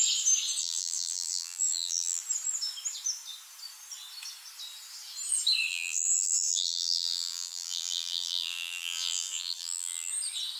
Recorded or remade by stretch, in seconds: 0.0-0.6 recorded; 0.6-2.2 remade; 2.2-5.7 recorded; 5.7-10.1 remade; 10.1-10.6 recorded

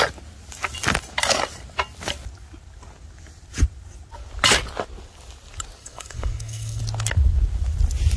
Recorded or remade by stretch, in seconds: 0.0-5.8 recorded; 5.8-6.8 remade; 6.8-8.2 recorded